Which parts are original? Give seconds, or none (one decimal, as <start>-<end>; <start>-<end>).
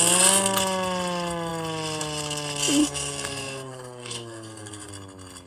0.0-2.8; 4.9-5.5